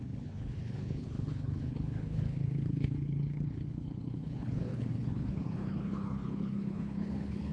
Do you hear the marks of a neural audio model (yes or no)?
yes